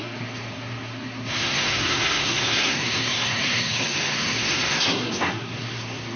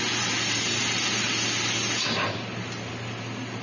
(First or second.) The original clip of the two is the second